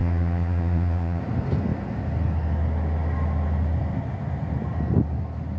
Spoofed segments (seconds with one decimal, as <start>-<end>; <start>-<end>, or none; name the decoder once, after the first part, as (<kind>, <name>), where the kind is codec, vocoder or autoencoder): 0.0-1.2 (vocoder, Vocos)